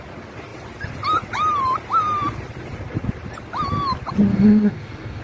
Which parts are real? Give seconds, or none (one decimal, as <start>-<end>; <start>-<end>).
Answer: 0.0-4.3